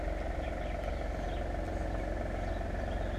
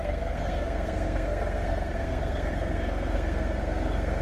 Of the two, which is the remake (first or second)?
second